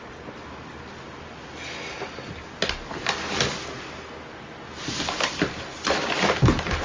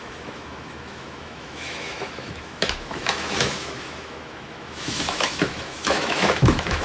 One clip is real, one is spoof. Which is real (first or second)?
first